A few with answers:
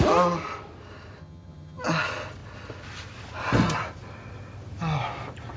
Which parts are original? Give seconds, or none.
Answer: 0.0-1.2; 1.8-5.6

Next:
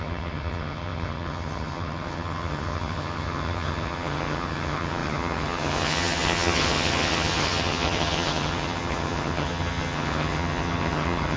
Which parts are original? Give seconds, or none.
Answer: none

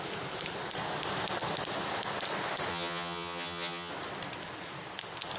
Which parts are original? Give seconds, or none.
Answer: 0.0-2.7; 3.9-5.4